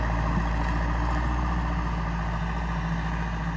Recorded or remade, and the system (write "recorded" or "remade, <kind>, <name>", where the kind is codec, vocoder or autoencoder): recorded